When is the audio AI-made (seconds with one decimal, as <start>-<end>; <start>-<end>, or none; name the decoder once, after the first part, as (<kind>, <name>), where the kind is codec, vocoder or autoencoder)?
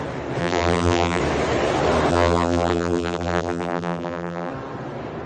0.4-1.2 (vocoder, BigVGAN v2); 2.1-4.5